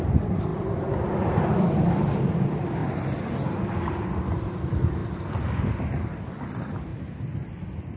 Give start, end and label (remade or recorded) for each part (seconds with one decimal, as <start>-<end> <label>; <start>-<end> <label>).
0.0-2.8 remade; 2.8-4.0 recorded; 4.0-5.0 remade; 5.0-6.3 recorded; 6.3-6.9 remade; 6.9-7.5 recorded; 7.5-8.0 remade